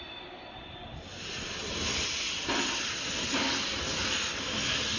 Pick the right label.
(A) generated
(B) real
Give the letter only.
B